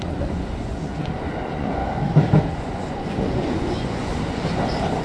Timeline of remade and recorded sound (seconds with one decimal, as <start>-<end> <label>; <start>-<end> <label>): 0.0-1.8 remade; 1.8-2.5 recorded; 2.5-4.1 remade; 4.1-5.0 recorded